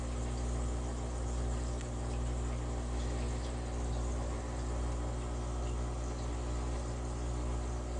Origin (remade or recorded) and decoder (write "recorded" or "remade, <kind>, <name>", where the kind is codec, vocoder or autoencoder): recorded